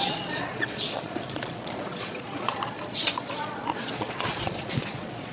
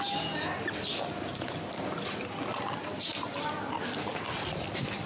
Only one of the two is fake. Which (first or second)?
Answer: first